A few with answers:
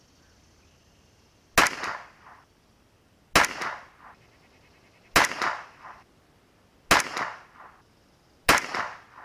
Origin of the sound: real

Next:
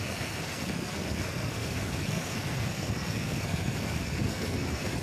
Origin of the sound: fake